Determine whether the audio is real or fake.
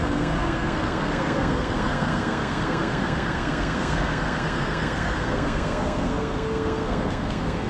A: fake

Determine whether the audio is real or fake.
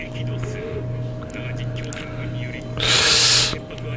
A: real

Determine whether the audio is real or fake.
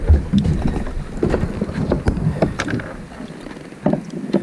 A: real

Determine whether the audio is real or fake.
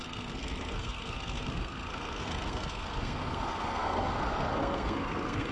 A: fake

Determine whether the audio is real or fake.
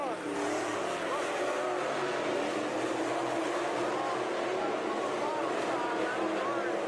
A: real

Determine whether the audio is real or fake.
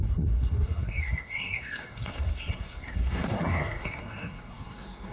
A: fake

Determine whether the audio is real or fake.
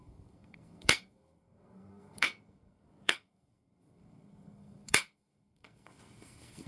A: fake